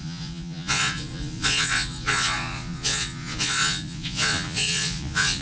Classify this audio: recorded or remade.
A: remade